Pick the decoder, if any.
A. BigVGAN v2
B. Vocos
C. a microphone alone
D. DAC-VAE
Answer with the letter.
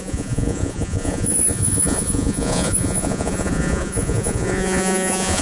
B